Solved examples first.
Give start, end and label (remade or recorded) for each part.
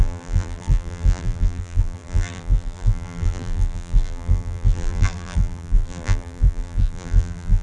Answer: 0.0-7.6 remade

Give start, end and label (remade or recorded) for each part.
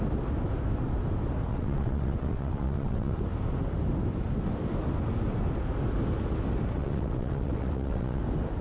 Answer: 0.0-1.5 recorded; 1.5-3.2 remade; 3.2-6.8 recorded; 6.8-8.2 remade; 8.2-8.6 recorded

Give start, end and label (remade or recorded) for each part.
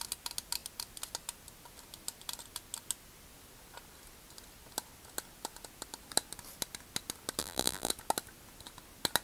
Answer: 0.0-7.4 recorded; 7.4-7.9 remade; 7.9-9.2 recorded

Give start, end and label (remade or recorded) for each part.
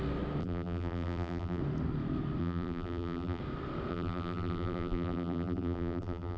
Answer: 0.0-0.4 recorded; 0.4-1.6 remade; 1.6-2.4 recorded; 2.4-3.4 remade; 3.4-3.9 recorded; 3.9-6.4 remade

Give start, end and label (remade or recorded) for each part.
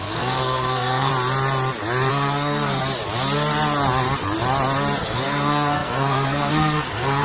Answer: 0.0-1.1 remade; 1.1-2.1 recorded; 2.1-2.8 remade; 2.8-5.0 recorded; 5.0-7.2 remade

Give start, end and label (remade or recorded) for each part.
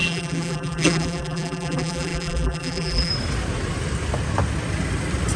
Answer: 0.0-3.1 remade; 3.1-5.4 recorded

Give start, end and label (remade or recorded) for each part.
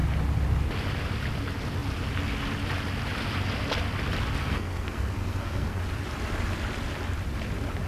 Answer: 0.0-4.4 recorded; 4.4-5.8 remade; 5.8-7.9 recorded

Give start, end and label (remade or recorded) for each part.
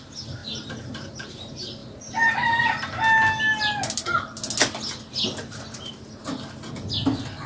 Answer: 0.0-0.4 recorded; 0.4-1.3 remade; 1.3-1.8 recorded; 1.8-2.5 remade; 2.5-5.1 recorded; 5.1-6.2 remade; 6.2-7.5 recorded